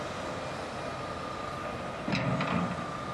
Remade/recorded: recorded